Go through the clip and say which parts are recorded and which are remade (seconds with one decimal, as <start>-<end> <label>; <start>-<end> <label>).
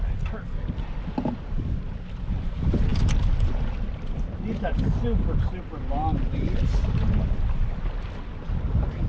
0.0-9.1 recorded